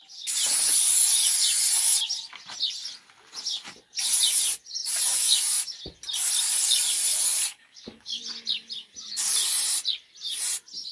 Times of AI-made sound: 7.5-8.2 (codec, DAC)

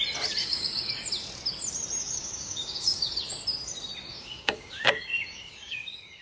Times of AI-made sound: 0.4-0.9 (codec, DAC); 2.0-3.1; 4.1-6.2

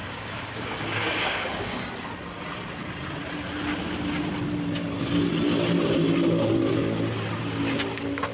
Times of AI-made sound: 0.0-1.8 (codec, DAC)

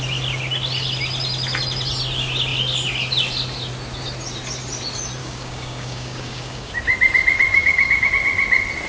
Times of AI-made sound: 5.2-6.7 (codec, DAC); 7.5-8.1

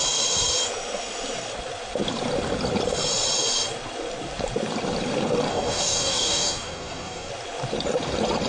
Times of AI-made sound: 5.5-7.3 (codec, DAC)